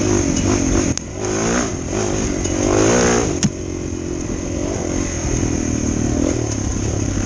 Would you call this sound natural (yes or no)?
yes